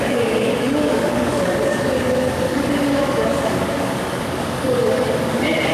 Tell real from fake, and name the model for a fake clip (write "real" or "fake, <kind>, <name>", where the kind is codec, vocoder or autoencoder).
fake, codec, DAC